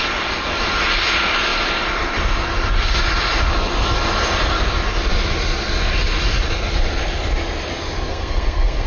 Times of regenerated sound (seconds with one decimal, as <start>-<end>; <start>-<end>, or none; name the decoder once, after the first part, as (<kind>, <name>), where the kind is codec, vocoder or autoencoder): 8.1-8.9 (codec, SNAC)